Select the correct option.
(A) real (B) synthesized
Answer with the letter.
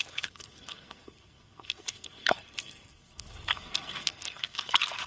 B